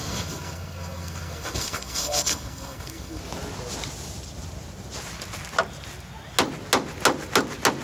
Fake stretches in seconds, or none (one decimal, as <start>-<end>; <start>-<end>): 0.0-3.2